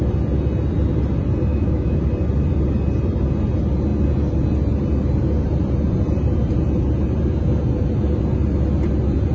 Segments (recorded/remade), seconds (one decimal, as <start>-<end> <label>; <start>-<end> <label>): 0.0-1.5 recorded; 1.5-2.0 remade; 2.0-9.3 recorded